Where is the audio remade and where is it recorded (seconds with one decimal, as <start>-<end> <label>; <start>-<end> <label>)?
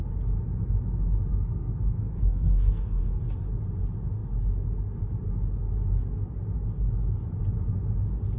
0.0-1.3 recorded; 1.3-3.2 remade; 3.2-8.4 recorded